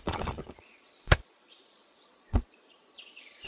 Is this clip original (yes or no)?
no